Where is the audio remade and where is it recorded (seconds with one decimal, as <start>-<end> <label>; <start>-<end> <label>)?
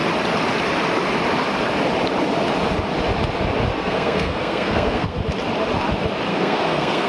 0.0-3.7 recorded; 3.7-5.2 remade; 5.2-6.3 recorded; 6.3-7.1 remade